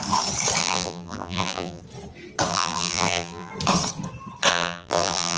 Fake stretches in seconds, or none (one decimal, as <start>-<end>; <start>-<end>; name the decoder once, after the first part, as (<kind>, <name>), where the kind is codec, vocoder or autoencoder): 0.6-1.8 (vocoder, BigVGAN v2); 2.5-3.5; 4.5-5.4